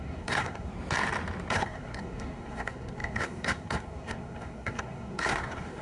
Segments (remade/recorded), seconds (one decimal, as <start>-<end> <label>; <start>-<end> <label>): 0.0-0.7 remade; 0.7-1.5 recorded; 1.5-5.8 remade